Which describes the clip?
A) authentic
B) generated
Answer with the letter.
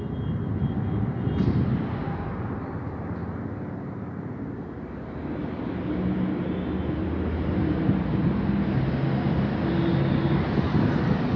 A